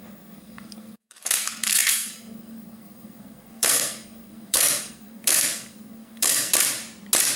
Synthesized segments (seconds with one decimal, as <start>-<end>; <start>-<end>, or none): 0.0-6.5